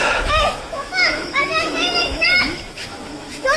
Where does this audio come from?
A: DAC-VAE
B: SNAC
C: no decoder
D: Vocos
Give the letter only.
A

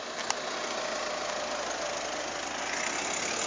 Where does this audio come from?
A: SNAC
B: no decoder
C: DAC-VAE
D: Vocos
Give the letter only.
B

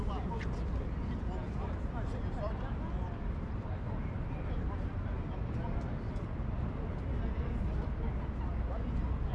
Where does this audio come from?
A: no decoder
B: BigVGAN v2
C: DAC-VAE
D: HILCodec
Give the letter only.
A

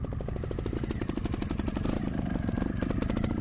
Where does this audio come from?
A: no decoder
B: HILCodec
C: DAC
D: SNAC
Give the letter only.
A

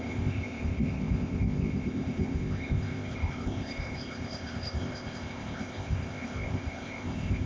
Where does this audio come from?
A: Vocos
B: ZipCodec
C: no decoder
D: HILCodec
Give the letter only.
B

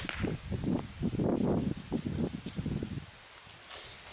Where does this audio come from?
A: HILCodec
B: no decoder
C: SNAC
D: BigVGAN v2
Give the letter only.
B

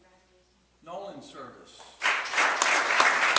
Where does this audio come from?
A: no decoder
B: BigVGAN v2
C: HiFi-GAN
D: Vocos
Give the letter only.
A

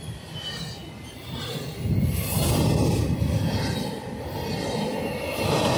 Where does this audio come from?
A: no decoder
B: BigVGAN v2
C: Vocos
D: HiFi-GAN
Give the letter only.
A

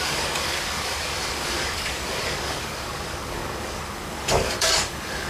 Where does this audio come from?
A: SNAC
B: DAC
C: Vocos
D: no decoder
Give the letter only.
B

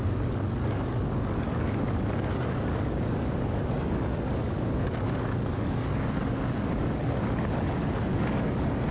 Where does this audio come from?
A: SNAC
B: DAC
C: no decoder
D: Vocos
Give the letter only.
B